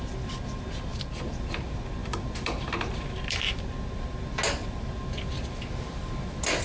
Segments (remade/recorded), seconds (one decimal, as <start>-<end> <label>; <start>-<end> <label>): 0.0-2.0 recorded; 2.0-3.7 remade; 3.7-6.6 recorded